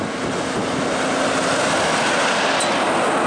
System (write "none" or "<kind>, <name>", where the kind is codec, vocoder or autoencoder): none